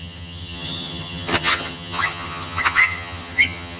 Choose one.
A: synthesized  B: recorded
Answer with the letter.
A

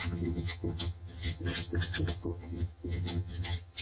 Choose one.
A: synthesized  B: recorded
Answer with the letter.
A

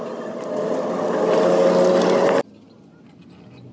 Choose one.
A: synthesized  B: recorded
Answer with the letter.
B